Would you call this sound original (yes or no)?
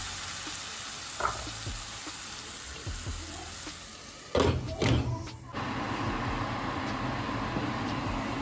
yes